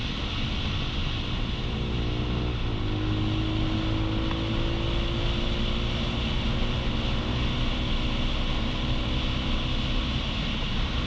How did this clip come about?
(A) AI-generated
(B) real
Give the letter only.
B